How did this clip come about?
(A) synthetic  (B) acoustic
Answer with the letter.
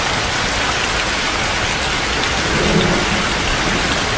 B